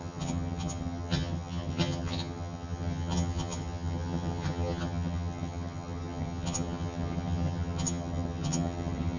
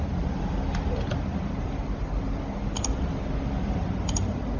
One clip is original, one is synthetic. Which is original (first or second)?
second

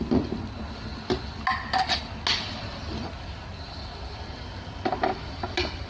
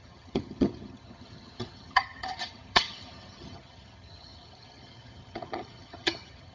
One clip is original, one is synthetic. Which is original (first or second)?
first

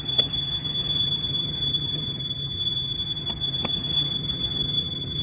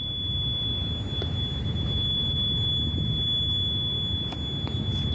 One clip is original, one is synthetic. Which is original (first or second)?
second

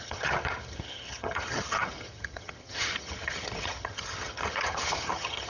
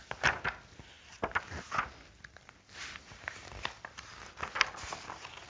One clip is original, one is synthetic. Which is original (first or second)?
second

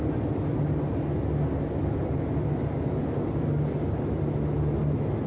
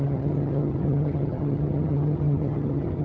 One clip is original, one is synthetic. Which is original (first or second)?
first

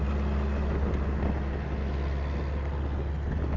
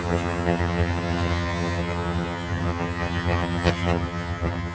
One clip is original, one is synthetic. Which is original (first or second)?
first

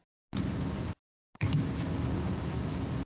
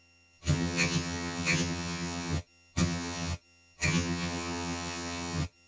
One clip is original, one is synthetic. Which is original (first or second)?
first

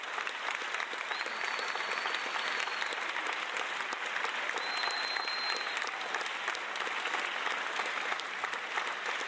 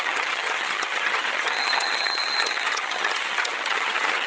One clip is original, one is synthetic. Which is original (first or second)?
first